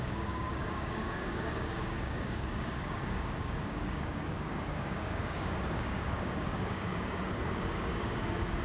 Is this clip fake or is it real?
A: fake